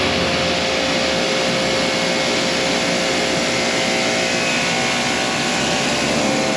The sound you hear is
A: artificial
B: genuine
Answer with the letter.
B